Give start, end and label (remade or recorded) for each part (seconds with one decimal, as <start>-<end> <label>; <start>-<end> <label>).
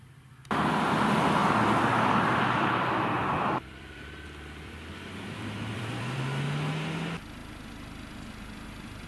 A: 0.0-1.4 recorded; 1.4-6.2 remade; 6.2-9.1 recorded